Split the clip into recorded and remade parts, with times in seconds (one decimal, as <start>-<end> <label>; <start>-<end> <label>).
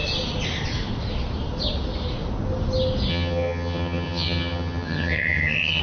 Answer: 0.0-3.1 recorded; 3.1-5.8 remade